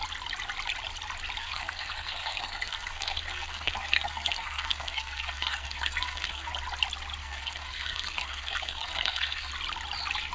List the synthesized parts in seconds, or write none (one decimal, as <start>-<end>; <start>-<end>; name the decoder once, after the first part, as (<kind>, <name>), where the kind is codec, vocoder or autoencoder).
1.4-6.5 (codec, SNAC); 7.2-9.5